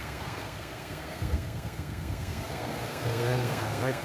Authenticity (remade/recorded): remade